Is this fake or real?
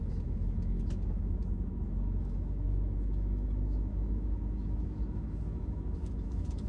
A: fake